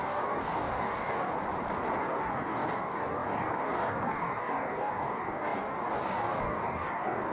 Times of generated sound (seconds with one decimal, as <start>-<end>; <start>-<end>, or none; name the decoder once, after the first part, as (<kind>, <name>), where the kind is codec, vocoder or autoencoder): 0.0-1.3 (codec, DAC); 2.0-7.3